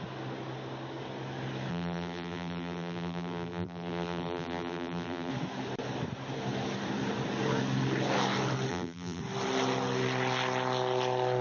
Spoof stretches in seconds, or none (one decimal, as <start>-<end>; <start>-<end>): 1.7-5.3; 8.7-9.2